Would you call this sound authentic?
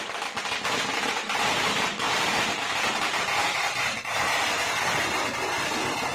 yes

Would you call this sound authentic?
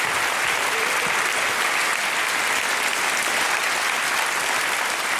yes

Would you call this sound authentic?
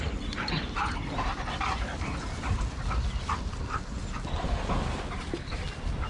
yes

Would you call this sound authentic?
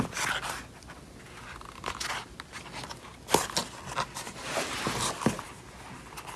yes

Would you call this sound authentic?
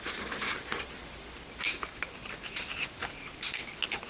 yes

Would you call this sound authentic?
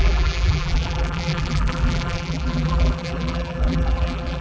no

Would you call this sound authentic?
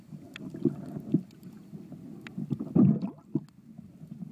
yes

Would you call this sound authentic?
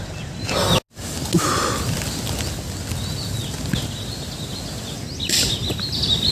yes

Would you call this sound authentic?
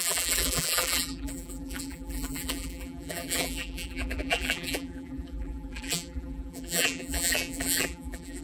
no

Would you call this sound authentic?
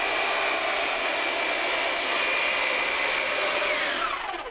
no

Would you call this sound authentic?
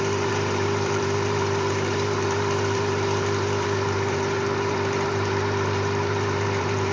no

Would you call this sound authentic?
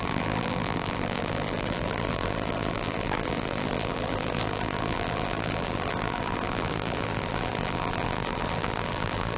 no